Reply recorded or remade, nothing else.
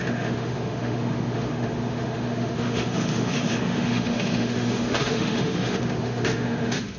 remade